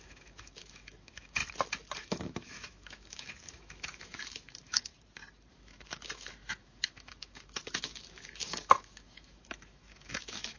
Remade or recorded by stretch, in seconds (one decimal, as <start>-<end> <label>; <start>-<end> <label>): 0.0-1.4 remade; 1.4-2.0 recorded; 2.0-4.9 remade; 4.9-5.5 recorded; 5.5-10.6 remade